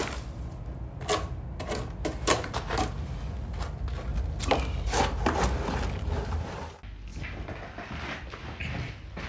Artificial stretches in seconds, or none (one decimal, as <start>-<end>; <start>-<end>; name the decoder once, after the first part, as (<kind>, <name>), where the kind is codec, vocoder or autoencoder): none